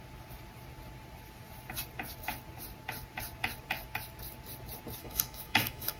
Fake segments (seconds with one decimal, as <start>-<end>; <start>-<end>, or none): 5.0-6.0